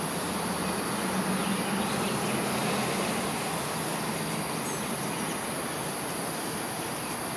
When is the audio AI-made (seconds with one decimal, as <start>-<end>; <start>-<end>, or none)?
none